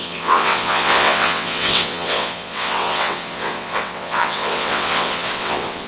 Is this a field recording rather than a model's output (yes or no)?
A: no